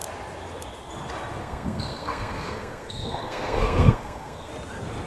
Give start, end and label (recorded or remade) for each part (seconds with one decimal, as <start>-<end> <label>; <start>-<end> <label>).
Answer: 0.0-1.4 recorded; 1.4-4.5 remade; 4.5-5.1 recorded